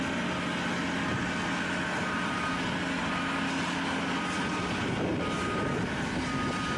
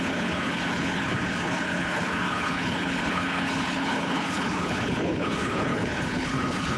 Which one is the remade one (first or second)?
second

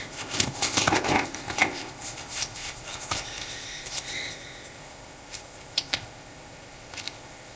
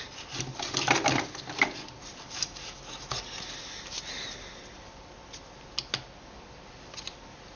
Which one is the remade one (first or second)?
first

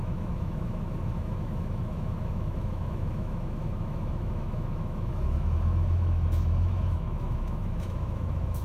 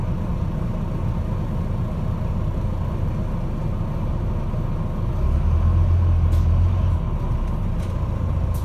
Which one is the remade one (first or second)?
first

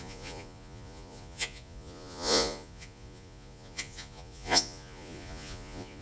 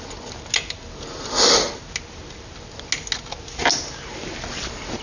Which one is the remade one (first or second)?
first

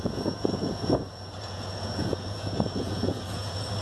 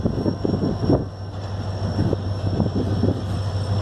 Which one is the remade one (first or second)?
first